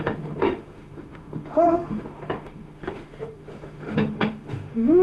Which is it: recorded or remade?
remade